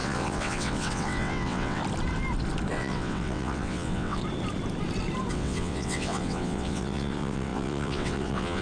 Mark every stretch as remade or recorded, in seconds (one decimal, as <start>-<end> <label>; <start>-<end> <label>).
0.0-1.8 remade; 1.8-2.7 recorded; 2.7-4.2 remade; 4.2-5.3 recorded; 5.3-8.6 remade